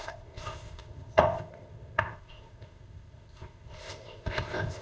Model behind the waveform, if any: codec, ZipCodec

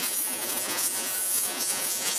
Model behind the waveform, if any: vocoder, Vocos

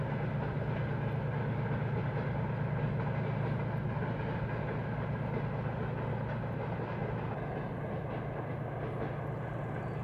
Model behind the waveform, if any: none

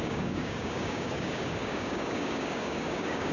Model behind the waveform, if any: codec, DAC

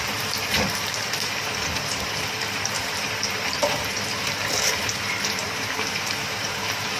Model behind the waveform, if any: vocoder, BigVGAN v2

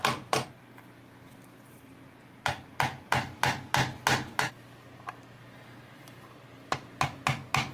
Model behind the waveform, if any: none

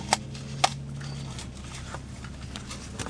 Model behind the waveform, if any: none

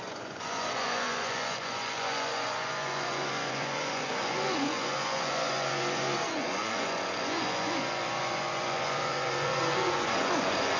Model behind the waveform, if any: vocoder, Vocos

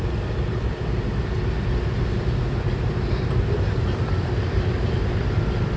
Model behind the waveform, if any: none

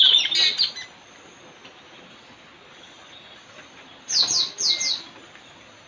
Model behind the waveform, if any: none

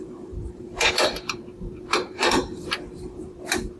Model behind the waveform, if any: vocoder, BigVGAN v2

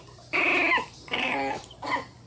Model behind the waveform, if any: none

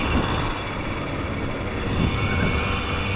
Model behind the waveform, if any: none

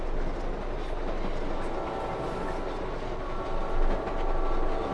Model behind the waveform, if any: none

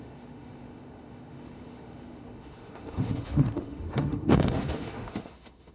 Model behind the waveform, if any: autoencoder, DAC-VAE